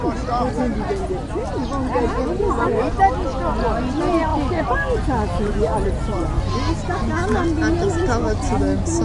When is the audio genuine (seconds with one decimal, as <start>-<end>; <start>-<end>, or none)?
0.0-9.0